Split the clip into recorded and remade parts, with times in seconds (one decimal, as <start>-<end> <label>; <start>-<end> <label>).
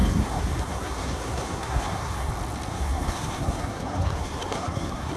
0.0-2.3 remade; 2.3-2.7 recorded; 2.7-5.2 remade